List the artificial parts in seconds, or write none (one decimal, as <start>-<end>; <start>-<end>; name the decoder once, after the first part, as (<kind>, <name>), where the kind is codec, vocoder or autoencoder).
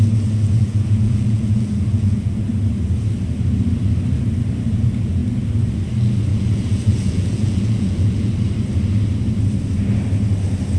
0.6-2.5 (vocoder, Vocos); 6.3-8.3